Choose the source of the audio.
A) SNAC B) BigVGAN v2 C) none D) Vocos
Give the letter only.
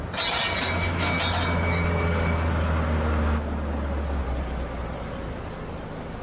C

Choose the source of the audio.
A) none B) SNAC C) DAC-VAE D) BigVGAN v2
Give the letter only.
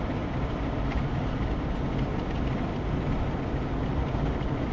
A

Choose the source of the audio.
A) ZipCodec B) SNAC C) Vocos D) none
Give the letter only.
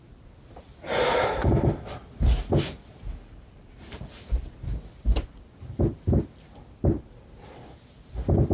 D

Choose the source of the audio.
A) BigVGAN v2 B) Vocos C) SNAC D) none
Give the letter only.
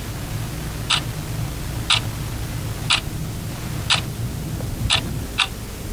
D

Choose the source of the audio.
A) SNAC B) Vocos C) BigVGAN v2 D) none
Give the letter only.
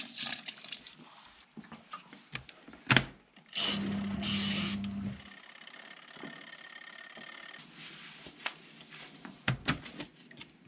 D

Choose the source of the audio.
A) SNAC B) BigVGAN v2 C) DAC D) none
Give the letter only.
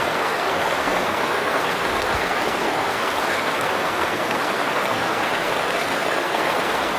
A